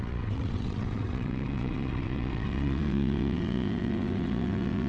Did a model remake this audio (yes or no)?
yes